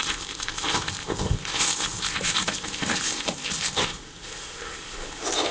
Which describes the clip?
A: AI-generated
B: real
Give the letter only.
A